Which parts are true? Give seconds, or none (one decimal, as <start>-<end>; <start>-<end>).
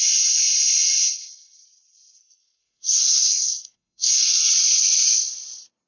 0.0-2.2; 4.5-5.9